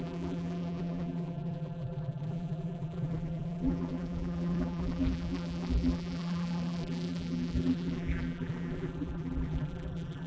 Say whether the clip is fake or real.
fake